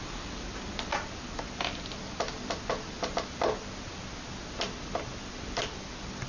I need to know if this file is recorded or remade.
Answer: recorded